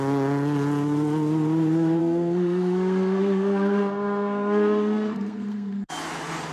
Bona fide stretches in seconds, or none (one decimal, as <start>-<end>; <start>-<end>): 0.0-2.0; 5.9-6.5